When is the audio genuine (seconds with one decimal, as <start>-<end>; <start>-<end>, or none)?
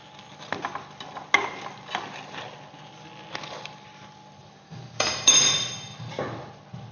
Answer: 0.0-4.4; 5.7-6.9